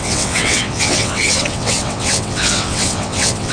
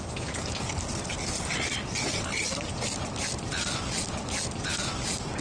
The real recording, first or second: second